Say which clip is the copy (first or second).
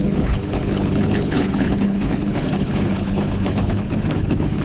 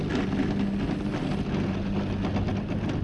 first